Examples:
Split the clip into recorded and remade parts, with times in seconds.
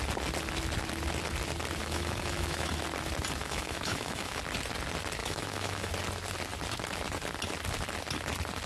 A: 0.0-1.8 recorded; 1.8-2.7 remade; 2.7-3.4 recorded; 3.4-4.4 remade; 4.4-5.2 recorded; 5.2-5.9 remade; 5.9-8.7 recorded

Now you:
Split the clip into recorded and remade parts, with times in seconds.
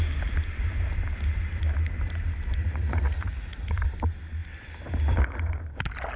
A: 0.0-2.6 recorded; 2.6-3.8 remade; 3.8-6.2 recorded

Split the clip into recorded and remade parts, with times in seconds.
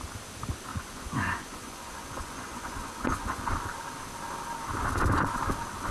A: 0.0-0.7 recorded; 0.7-3.5 remade; 3.5-5.9 recorded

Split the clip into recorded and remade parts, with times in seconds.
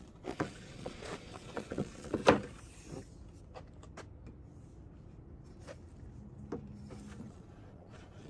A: 0.0-2.2 remade; 2.2-7.2 recorded; 7.2-8.3 remade